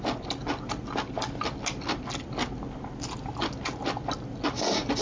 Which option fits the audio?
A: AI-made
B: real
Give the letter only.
B